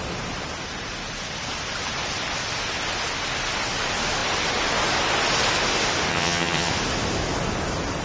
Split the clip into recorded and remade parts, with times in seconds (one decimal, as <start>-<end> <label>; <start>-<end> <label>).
0.0-6.1 recorded; 6.1-6.7 remade; 6.7-8.0 recorded